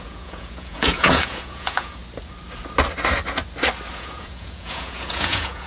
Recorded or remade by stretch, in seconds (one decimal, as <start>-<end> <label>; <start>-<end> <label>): 0.0-2.0 remade; 2.0-3.9 recorded; 3.9-5.7 remade

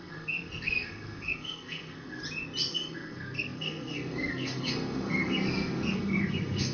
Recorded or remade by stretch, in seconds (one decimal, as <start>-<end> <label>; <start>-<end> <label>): 0.0-2.2 remade; 2.2-2.7 recorded; 2.7-6.7 remade